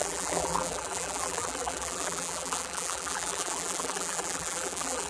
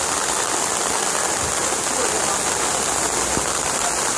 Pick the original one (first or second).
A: second